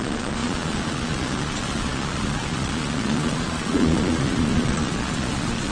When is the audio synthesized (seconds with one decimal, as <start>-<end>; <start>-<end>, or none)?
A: 0.0-5.7